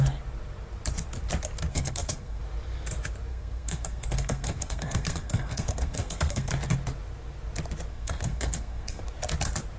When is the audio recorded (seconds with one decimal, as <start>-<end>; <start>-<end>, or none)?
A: 0.0-1.7; 2.4-3.3; 6.5-7.9; 9.0-9.8